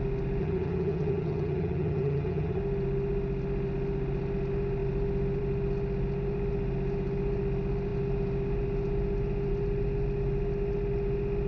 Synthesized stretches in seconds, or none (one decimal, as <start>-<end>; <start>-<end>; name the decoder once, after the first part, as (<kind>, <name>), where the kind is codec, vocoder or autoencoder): 0.4-2.6 (vocoder, HiFi-GAN)